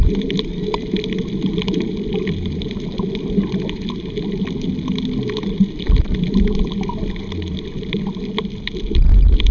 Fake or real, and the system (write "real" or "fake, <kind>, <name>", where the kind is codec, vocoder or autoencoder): real